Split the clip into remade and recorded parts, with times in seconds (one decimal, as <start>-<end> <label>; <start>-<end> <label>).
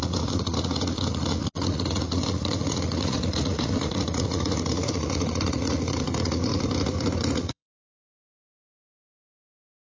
0.0-6.5 remade; 6.5-7.2 recorded; 7.2-9.9 remade